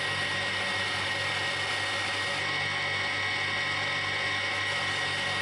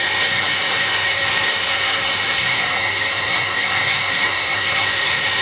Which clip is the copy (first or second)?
second